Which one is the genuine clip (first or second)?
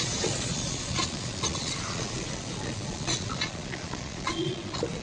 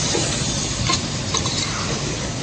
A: second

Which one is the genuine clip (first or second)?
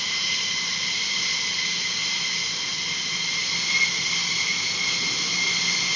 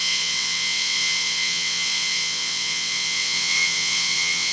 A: first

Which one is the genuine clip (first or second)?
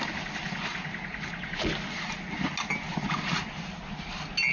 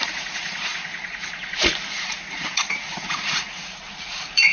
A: first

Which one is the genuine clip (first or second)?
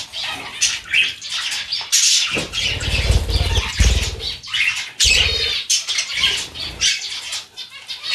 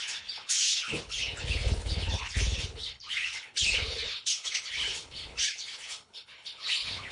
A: first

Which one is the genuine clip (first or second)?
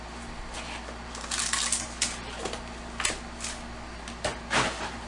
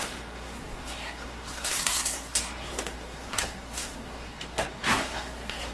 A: first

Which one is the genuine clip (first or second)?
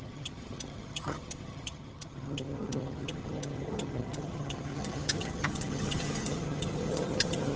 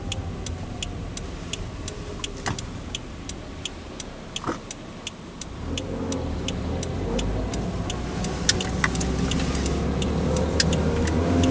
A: second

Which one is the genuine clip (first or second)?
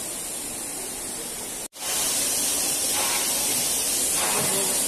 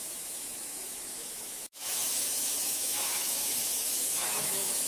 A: first